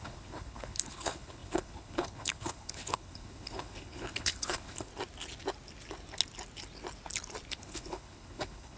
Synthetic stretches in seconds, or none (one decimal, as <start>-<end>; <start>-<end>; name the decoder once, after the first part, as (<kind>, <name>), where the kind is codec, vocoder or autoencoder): 0.0-4.9 (codec, HILCodec); 7.5-8.8